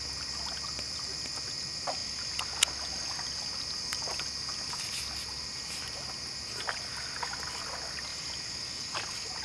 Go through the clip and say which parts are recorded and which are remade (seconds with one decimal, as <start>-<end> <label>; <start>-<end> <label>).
0.0-9.4 recorded